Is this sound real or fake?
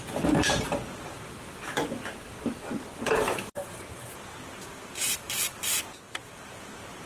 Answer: fake